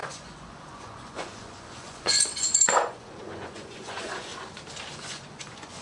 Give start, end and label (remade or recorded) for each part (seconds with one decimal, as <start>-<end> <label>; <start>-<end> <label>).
0.0-4.3 remade; 4.3-4.9 recorded; 4.9-5.8 remade